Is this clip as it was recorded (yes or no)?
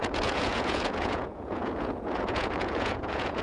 no